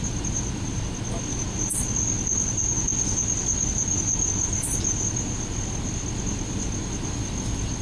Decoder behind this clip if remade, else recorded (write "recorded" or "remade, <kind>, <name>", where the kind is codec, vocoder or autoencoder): recorded